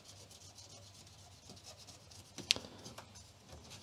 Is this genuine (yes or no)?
yes